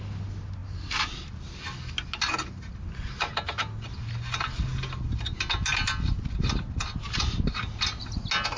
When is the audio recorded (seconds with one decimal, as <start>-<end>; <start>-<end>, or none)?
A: 0.0-8.6